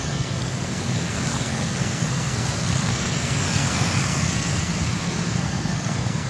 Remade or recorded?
remade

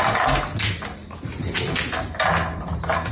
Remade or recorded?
recorded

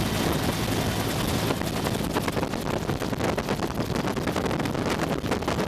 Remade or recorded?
recorded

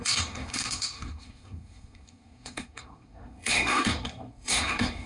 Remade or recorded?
remade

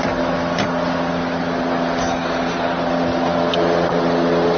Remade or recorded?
recorded